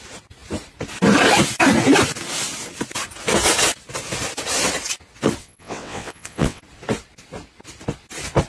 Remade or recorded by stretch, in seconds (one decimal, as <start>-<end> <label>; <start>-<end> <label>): 0.0-5.4 recorded; 5.4-6.6 remade; 6.6-8.5 recorded